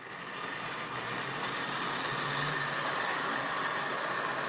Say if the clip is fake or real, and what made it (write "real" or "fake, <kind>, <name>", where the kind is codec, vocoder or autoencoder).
real